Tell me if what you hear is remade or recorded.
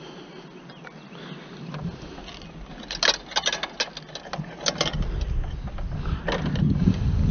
recorded